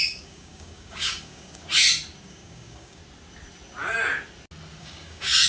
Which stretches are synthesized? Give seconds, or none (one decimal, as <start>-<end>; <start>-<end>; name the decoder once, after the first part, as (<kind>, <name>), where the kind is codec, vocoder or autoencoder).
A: 0.0-1.6 (codec, DAC); 2.2-3.0; 4.8-5.5